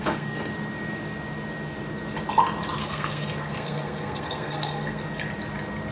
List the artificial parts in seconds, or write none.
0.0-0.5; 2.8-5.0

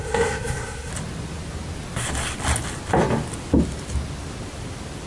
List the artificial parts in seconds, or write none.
0.0-0.9

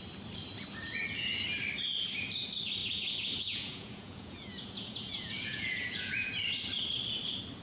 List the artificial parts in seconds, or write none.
2.8-6.3

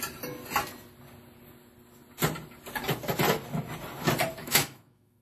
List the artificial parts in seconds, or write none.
4.4-5.2

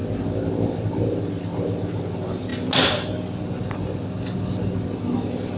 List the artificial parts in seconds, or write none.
none

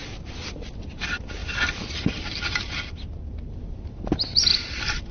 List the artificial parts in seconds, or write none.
none

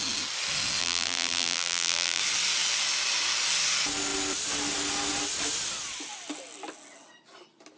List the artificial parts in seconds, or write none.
0.8-2.2